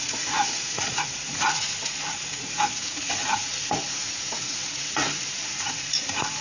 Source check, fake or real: fake